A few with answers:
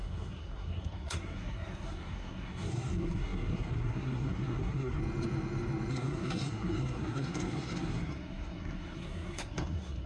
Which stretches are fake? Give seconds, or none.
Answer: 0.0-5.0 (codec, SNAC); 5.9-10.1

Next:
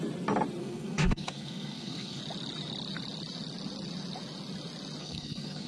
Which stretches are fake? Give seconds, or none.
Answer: 0.6-2.2 (codec, SNAC); 5.0-5.7

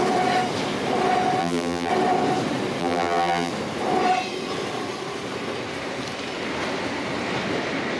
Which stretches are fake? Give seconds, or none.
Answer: 1.4-1.9 (vocoder, BigVGAN v2); 2.8-3.5

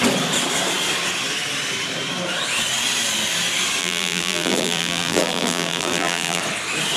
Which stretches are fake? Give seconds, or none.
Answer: 3.8-6.4 (vocoder, BigVGAN v2)